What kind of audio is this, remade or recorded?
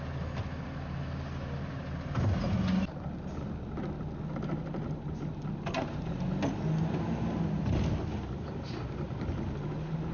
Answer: recorded